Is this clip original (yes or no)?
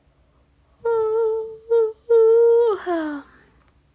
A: yes